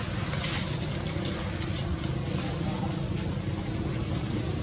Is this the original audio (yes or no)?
yes